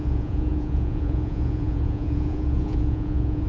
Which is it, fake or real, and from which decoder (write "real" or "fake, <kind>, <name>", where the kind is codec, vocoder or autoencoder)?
fake, vocoder, Vocos